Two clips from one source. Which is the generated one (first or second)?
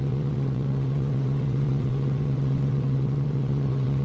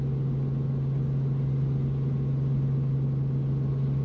first